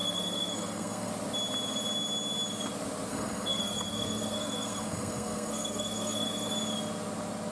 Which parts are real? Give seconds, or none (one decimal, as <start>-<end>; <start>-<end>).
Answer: 1.1-3.1; 6.5-7.5